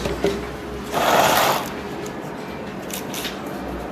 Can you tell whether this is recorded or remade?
recorded